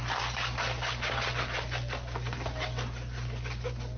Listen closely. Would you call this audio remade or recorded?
recorded